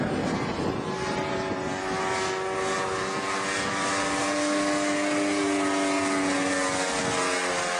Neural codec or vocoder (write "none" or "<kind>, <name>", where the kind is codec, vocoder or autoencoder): none